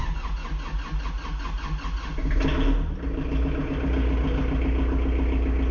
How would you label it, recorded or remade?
recorded